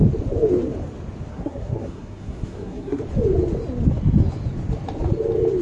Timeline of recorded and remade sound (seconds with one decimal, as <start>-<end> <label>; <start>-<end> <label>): 0.0-1.3 recorded; 1.3-3.0 remade; 3.0-5.6 recorded